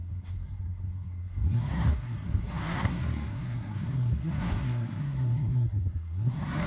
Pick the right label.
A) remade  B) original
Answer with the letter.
A